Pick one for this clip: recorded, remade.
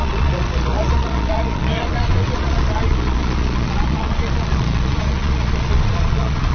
remade